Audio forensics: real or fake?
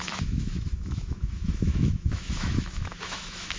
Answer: fake